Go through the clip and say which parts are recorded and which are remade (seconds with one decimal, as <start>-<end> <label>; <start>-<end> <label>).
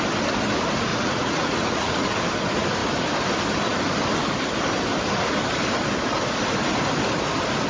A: 0.0-0.9 recorded; 0.9-2.2 remade; 2.2-7.7 recorded